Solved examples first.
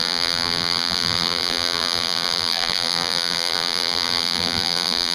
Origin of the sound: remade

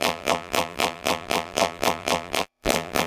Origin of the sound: remade